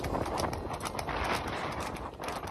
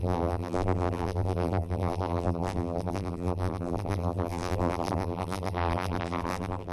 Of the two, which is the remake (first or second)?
second